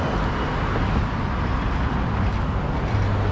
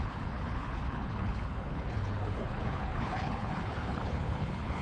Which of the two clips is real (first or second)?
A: first